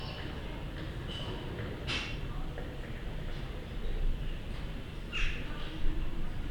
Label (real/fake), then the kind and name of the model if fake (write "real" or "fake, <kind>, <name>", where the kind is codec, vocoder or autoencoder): real